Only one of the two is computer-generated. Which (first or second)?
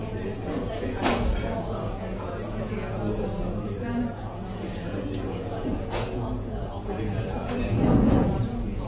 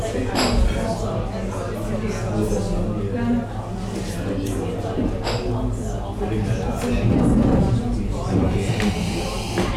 first